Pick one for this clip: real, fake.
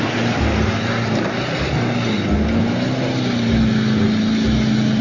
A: real